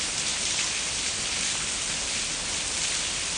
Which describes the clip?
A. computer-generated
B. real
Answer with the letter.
B